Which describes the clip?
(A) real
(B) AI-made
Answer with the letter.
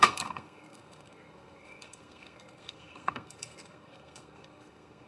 B